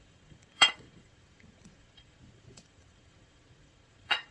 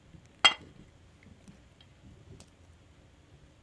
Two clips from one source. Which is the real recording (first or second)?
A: second